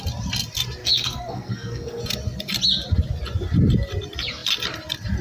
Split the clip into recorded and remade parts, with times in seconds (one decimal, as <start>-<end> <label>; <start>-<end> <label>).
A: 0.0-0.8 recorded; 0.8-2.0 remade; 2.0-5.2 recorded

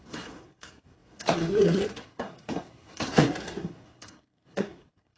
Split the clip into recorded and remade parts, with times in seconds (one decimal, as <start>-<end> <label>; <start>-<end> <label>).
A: 0.0-5.2 remade

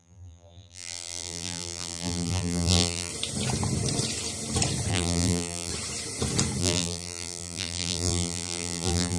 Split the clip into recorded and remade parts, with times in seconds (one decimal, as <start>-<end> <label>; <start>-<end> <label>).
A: 0.0-3.1 remade; 3.1-4.9 recorded; 4.9-5.7 remade; 5.7-6.6 recorded; 6.6-9.2 remade

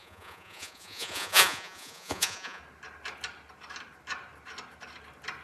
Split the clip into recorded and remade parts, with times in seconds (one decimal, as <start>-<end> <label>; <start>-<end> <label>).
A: 0.0-2.6 remade; 2.6-5.4 recorded

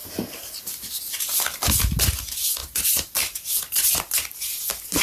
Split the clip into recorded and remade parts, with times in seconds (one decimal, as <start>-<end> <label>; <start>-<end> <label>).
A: 0.0-5.0 recorded

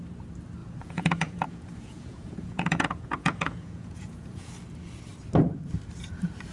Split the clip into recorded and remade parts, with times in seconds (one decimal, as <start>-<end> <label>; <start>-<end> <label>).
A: 0.0-0.6 recorded; 0.6-4.5 remade; 4.5-6.5 recorded

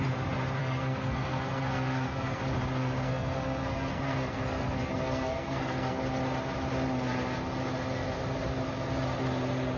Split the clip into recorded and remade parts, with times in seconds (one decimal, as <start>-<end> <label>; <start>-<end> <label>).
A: 0.0-0.6 recorded; 0.6-2.4 remade; 2.4-2.8 recorded; 2.8-6.0 remade; 6.0-9.8 recorded